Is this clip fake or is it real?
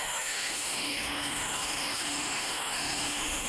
fake